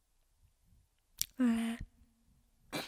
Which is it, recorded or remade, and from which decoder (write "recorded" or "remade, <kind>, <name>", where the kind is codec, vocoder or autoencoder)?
recorded